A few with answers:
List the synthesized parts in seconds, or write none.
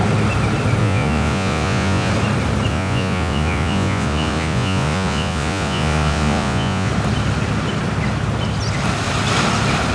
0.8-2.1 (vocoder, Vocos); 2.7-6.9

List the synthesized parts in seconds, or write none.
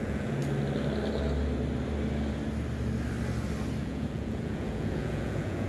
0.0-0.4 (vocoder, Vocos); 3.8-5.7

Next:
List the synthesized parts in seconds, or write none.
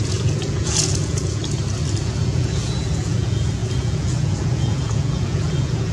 0.0-1.4 (vocoder, Vocos); 2.0-5.9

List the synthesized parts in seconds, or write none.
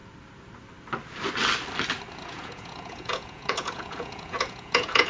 2.2-5.1 (vocoder, Vocos)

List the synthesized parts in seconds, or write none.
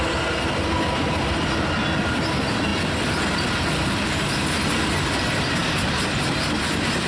none